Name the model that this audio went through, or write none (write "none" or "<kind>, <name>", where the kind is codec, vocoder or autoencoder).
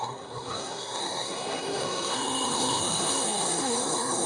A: codec, SNAC